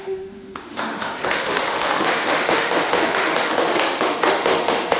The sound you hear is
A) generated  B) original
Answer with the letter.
A